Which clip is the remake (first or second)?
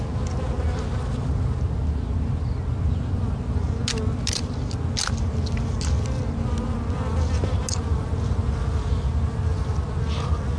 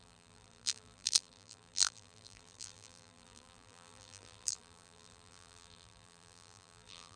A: second